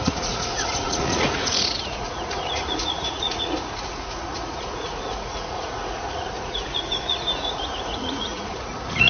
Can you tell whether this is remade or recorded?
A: remade